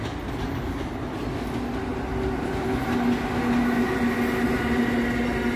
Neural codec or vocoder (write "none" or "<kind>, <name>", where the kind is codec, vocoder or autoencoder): none